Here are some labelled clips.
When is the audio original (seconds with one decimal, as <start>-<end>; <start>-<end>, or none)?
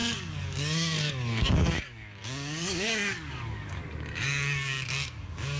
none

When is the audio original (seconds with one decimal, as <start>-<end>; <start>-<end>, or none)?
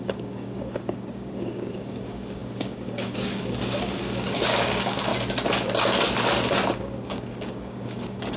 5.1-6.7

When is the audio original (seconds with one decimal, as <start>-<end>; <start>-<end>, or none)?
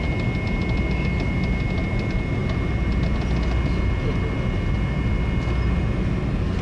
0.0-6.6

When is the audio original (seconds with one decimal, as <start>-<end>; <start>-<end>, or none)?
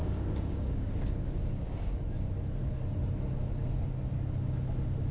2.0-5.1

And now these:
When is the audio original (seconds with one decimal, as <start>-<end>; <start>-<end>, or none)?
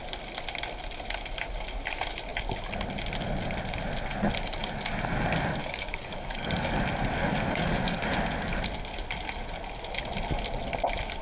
0.0-5.6; 6.8-7.2; 8.1-11.2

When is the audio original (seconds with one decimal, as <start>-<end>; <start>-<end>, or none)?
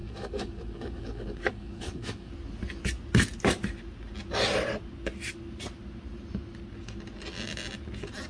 2.3-8.3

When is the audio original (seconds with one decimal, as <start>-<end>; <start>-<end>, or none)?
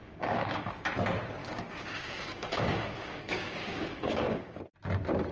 0.7-1.4; 4.6-5.3